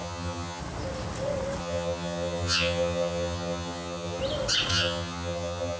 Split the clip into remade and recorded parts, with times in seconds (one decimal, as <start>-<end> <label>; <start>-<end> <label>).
0.0-0.6 remade; 0.6-1.6 recorded; 1.6-4.2 remade; 4.2-4.7 recorded; 4.7-5.8 remade